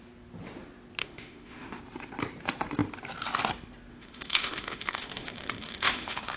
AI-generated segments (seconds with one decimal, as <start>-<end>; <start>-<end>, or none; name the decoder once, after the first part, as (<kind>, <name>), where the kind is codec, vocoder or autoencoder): 1.0-1.8 (autoencoder, DAC-VAE); 3.9-6.4